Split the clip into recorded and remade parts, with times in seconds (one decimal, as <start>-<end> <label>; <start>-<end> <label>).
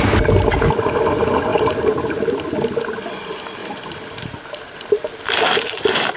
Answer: 0.0-1.5 recorded; 1.5-2.3 remade; 2.3-3.6 recorded; 3.6-6.2 remade